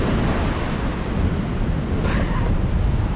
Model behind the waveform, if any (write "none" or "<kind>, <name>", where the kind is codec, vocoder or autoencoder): none